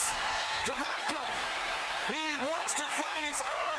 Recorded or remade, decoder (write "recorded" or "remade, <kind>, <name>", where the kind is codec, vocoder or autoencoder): remade, codec, SNAC